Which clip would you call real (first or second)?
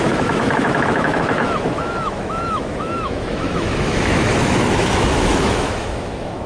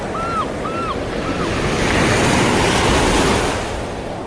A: second